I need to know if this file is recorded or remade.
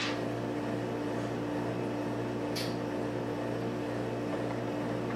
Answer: recorded